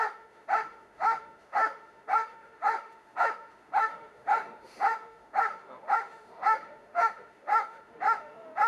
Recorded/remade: remade